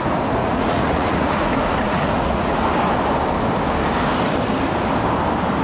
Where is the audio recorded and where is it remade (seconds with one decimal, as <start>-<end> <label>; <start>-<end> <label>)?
0.0-0.4 recorded; 0.4-2.6 remade; 2.6-5.6 recorded